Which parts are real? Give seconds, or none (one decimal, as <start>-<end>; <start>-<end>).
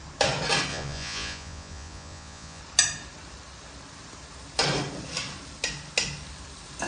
0.0-0.7; 2.6-6.9